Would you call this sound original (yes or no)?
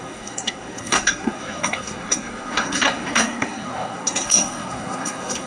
no